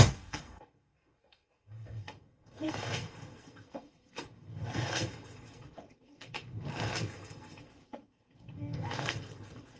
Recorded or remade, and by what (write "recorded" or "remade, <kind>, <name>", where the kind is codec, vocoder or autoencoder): remade, codec, SNAC